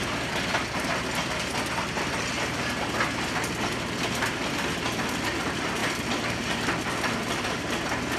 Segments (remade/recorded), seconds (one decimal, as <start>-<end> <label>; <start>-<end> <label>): 0.0-8.2 recorded

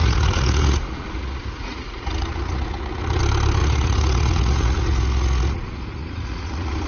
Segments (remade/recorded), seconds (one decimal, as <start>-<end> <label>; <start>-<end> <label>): 0.0-3.2 remade; 3.2-3.6 recorded; 3.6-6.9 remade

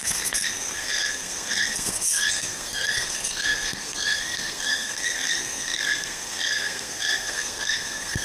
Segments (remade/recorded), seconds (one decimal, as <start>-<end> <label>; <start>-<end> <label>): 0.0-8.2 remade

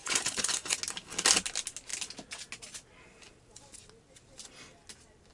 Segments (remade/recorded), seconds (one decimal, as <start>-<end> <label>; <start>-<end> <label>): 0.0-0.8 remade; 0.8-5.3 recorded

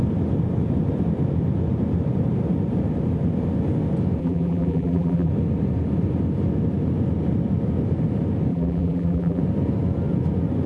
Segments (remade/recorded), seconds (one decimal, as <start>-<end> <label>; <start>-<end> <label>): 0.0-4.2 recorded; 4.2-5.3 remade; 5.3-8.5 recorded; 8.5-9.4 remade; 9.4-10.7 recorded

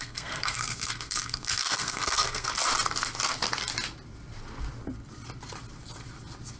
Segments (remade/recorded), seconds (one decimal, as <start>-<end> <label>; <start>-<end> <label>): 0.0-2.5 remade; 2.5-6.6 recorded